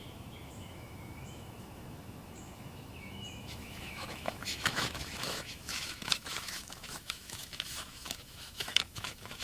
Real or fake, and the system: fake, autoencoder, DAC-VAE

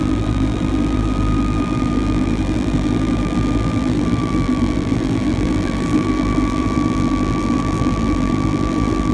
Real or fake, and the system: fake, vocoder, BigVGAN v2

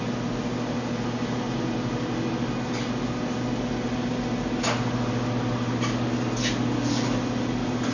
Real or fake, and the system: real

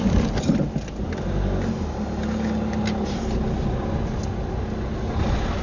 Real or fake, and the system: real